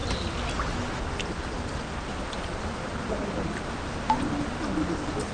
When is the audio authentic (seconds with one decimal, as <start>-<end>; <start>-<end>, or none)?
0.0-5.3